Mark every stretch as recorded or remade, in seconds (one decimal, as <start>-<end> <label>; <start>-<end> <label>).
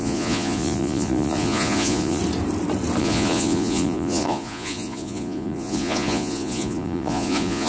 0.0-2.2 remade; 2.2-3.0 recorded; 3.0-7.7 remade